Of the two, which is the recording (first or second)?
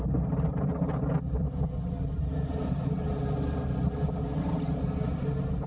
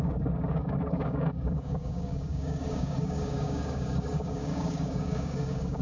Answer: first